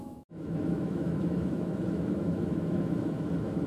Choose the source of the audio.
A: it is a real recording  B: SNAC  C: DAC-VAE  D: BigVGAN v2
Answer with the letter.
C